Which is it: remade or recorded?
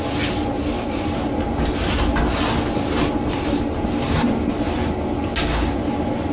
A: recorded